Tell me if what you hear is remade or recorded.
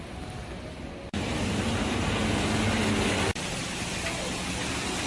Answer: recorded